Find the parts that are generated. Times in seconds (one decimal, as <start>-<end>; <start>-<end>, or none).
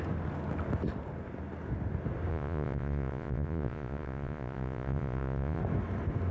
2.3-5.6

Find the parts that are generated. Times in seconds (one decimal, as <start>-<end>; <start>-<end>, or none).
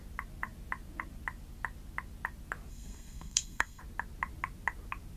2.7-3.8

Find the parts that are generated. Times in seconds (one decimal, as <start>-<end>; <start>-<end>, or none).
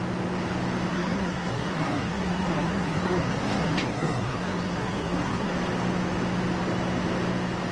0.9-5.5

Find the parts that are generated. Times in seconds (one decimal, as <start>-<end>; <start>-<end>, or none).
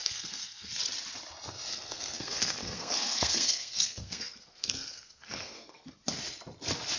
0.0-0.7; 1.7-5.9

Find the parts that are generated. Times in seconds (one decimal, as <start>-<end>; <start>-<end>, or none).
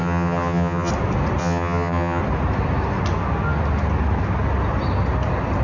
0.0-0.9; 1.4-2.2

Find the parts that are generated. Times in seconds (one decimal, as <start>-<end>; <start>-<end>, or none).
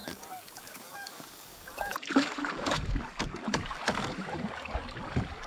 0.0-5.5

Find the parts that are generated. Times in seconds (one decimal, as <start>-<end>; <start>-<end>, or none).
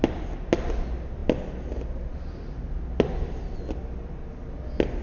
none